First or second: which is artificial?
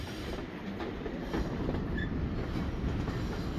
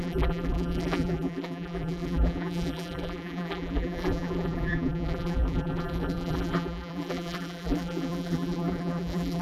second